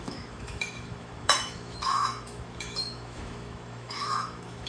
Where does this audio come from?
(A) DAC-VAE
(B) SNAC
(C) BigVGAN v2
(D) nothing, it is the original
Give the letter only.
A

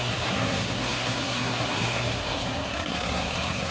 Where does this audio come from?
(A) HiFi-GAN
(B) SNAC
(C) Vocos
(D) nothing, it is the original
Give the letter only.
B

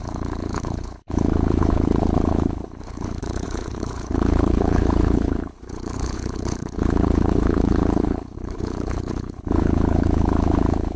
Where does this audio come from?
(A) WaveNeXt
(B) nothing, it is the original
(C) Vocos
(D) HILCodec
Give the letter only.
D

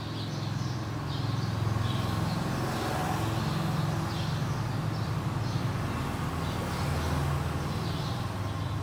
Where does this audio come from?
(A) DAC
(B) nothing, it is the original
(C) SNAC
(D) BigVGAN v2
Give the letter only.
B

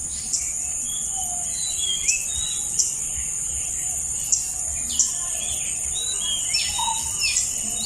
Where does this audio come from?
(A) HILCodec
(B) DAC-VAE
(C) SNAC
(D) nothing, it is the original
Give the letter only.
D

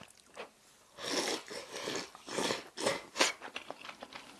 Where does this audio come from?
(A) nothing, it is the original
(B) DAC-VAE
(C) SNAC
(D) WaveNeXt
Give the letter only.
A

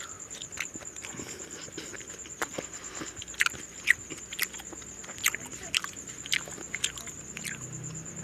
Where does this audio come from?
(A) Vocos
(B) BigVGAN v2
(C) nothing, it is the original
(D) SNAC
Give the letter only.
C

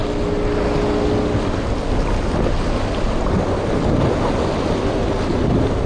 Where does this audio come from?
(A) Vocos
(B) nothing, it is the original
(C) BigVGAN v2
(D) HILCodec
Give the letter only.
B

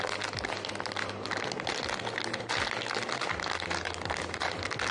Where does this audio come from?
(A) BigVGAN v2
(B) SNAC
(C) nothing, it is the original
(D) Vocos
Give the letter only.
C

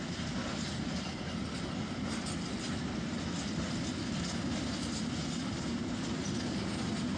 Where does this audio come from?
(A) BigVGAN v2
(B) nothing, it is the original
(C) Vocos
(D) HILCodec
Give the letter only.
B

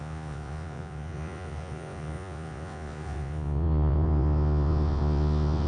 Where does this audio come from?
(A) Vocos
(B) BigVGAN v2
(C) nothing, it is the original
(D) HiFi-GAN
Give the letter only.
A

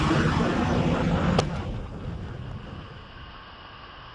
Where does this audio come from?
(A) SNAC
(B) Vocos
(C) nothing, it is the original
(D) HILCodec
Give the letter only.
C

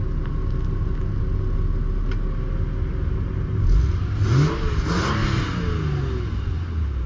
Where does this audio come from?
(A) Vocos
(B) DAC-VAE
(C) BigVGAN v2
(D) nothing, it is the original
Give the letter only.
D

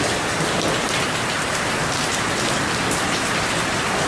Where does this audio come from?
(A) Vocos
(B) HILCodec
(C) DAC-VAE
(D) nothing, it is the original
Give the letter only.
D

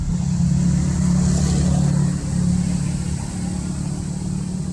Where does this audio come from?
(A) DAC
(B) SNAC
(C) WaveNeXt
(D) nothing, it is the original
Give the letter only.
D